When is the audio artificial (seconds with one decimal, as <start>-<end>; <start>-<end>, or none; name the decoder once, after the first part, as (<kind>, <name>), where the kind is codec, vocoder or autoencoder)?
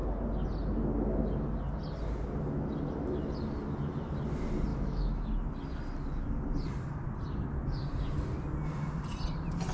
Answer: 4.7-5.3 (autoencoder, DAC-VAE)